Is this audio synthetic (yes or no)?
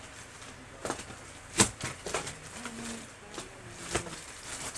no